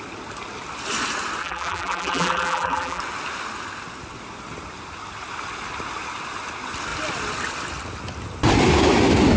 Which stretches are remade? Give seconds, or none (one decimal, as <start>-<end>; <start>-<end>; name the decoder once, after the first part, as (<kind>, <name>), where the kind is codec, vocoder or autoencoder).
1.4-3.0 (vocoder, BigVGAN v2)